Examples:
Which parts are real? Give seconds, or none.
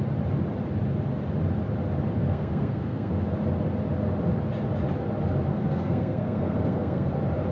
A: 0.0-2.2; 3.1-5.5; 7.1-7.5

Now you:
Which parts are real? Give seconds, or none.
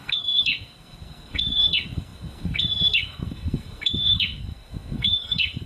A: none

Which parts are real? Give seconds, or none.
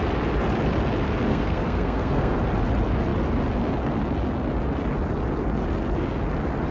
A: 0.0-1.3; 2.3-6.7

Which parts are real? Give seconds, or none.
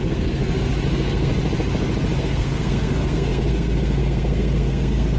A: 0.4-0.9; 1.3-2.2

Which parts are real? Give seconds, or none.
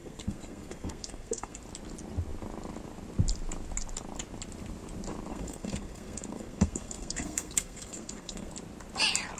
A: 1.6-5.3; 8.5-9.4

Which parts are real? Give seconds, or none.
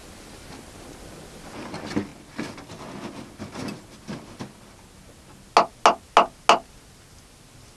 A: 0.0-7.8